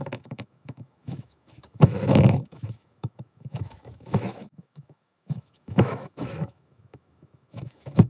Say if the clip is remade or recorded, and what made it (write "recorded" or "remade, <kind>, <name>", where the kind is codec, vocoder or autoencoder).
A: remade, autoencoder, DAC-VAE